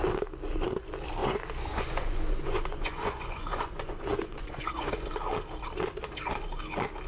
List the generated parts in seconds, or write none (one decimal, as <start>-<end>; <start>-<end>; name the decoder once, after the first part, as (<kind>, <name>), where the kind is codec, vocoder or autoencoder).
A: 1.2-5.1 (vocoder, Vocos)